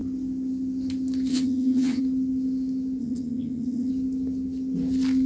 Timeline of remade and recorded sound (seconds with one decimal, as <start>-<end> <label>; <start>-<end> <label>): 0.0-1.3 recorded; 1.3-2.0 remade; 2.0-3.0 recorded; 3.0-3.9 remade; 3.9-5.3 recorded